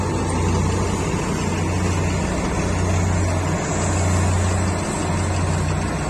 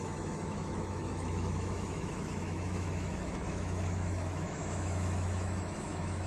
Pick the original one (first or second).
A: first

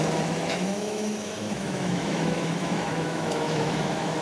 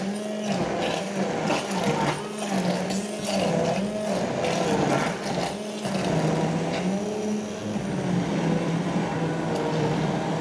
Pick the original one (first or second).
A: second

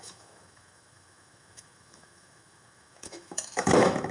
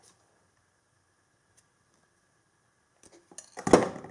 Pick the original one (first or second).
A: second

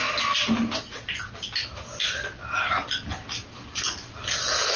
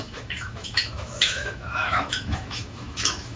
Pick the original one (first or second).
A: first